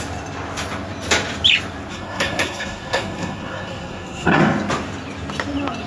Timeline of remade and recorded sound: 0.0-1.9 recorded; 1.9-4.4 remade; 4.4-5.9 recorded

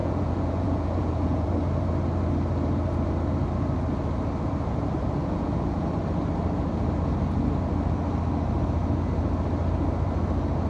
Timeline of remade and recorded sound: 0.0-1.5 remade; 1.5-5.2 recorded; 5.2-5.9 remade; 5.9-10.7 recorded

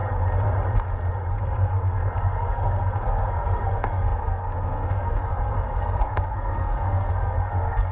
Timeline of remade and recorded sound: 0.0-1.3 recorded; 1.3-7.9 remade

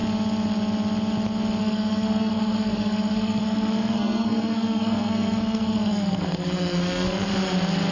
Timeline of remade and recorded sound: 0.0-1.6 recorded; 1.6-7.3 remade; 7.3-7.9 recorded

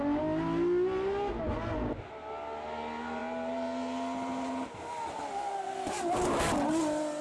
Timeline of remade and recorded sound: 0.0-7.2 recorded

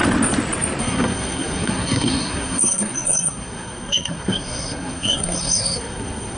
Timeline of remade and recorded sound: 0.0-0.8 recorded; 0.8-6.4 remade

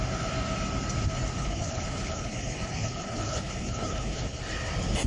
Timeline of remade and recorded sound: 0.0-1.3 recorded; 1.3-4.4 remade; 4.4-5.1 recorded

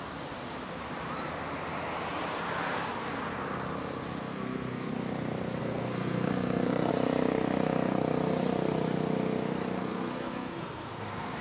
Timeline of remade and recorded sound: 0.0-4.2 recorded; 4.2-4.9 remade; 4.9-5.6 recorded; 5.6-6.9 remade; 6.9-9.8 recorded; 9.8-11.4 remade